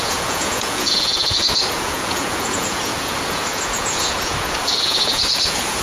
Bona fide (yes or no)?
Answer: no